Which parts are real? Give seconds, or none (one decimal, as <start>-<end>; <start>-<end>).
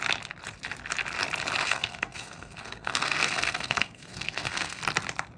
0.0-1.6; 4.8-5.4